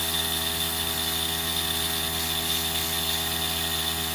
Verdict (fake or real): real